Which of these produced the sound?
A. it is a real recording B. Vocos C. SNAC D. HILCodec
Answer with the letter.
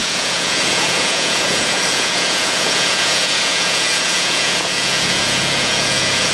B